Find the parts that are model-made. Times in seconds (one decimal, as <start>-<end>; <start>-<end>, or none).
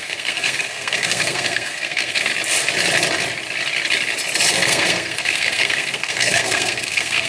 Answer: 0.0-2.3; 4.5-7.3